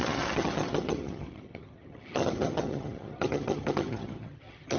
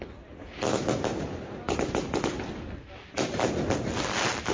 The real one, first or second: second